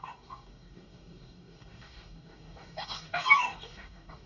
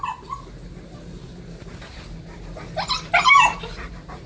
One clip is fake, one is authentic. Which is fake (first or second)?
first